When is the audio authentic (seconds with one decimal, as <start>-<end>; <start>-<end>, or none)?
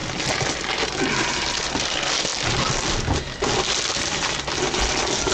0.0-5.3